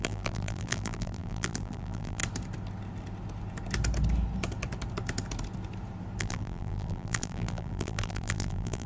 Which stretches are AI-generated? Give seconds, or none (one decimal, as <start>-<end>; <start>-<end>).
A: 0.0-2.2; 6.2-8.9